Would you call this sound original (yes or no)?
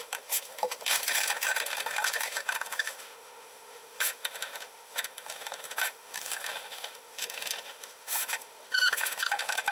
no